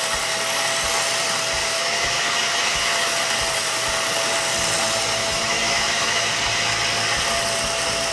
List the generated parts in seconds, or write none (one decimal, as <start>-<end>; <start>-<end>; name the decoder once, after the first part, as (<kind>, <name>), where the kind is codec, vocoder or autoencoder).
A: 1.6-3.2 (autoencoder, DAC-VAE); 5.2-6.3